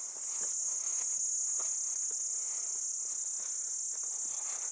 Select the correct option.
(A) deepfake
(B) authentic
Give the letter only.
B